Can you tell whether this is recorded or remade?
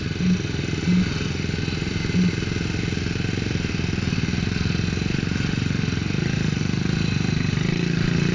recorded